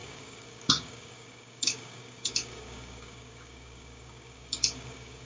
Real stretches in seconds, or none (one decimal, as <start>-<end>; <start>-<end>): none